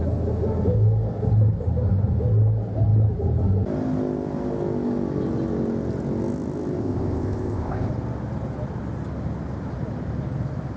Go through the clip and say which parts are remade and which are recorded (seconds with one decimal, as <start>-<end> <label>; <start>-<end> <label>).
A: 0.0-6.8 recorded; 6.8-7.9 remade; 7.9-10.8 recorded